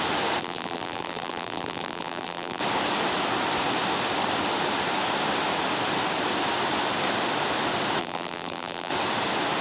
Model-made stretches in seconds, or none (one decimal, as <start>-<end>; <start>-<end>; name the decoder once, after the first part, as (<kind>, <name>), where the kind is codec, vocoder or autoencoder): 0.4-2.6 (vocoder, BigVGAN v2); 8.0-8.9